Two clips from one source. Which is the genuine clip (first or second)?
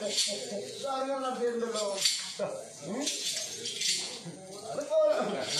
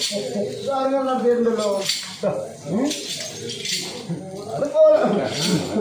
second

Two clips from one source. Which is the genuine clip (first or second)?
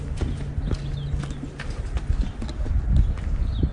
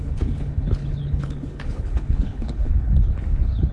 first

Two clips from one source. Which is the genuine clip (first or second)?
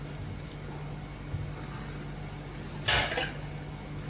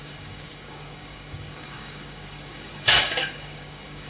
first